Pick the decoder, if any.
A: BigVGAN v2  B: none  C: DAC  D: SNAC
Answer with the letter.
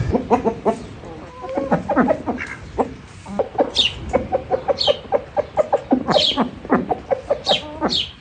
B